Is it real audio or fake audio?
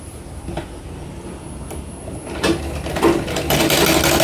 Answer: real